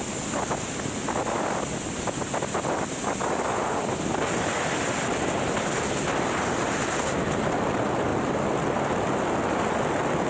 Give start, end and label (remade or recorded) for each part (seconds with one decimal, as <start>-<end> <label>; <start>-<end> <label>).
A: 0.0-10.3 recorded